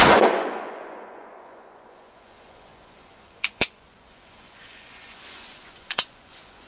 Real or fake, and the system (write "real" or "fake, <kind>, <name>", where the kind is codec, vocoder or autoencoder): fake, vocoder, Vocos